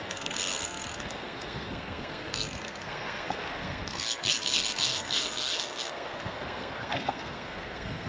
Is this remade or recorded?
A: remade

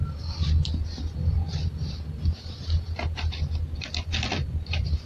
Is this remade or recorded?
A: recorded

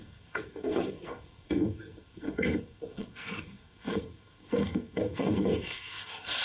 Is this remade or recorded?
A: remade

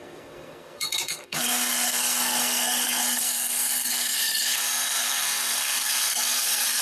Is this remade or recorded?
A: remade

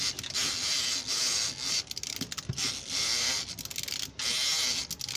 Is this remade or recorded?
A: recorded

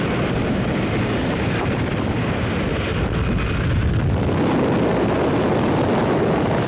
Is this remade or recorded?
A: recorded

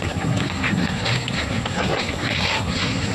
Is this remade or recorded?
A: remade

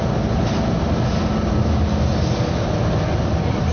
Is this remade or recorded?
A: recorded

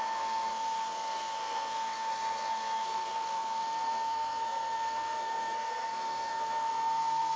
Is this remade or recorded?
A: remade